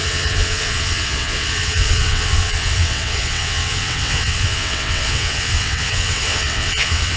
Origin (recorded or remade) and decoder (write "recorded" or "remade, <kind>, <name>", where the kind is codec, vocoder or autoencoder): remade, vocoder, WaveNeXt